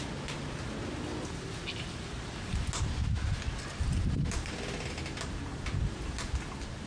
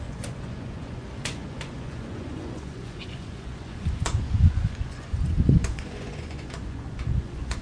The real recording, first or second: first